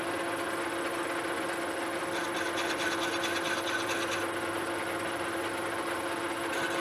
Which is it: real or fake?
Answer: real